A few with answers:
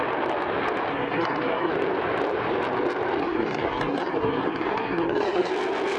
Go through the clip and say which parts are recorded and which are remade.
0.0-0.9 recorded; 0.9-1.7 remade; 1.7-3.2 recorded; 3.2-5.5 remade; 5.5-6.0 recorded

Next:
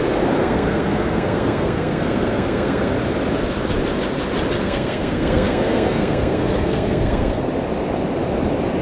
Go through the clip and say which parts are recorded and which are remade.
0.0-0.4 recorded; 0.4-2.9 remade; 2.9-4.6 recorded; 4.6-7.5 remade; 7.5-8.8 recorded